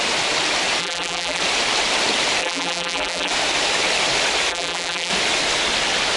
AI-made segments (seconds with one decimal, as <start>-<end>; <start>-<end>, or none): 0.8-1.4; 2.4-3.3; 4.5-5.1